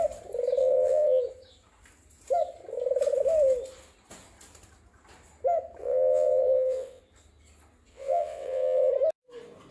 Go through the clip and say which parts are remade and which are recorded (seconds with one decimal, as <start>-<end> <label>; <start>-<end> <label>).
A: 0.0-0.6 recorded; 0.6-1.2 remade; 1.2-5.8 recorded; 5.8-7.0 remade; 7.0-7.9 recorded; 7.9-8.9 remade; 8.9-9.7 recorded